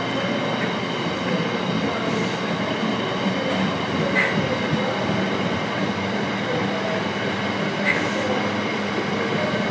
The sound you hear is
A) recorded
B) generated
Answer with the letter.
A